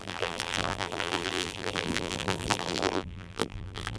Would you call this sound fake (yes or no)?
yes